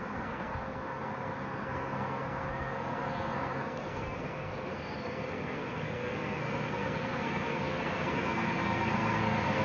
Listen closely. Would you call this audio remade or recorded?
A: remade